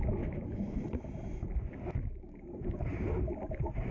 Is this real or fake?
real